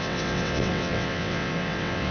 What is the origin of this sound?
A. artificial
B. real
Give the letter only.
A